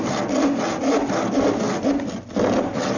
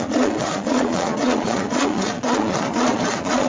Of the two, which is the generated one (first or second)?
second